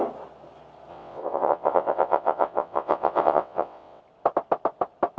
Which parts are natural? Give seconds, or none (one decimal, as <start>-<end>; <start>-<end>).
0.0-0.9; 4.0-5.2